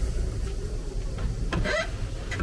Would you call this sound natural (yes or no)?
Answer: yes